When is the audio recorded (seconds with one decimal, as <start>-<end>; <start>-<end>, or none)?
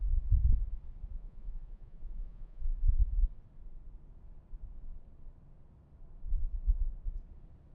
0.0-1.1; 2.6-7.7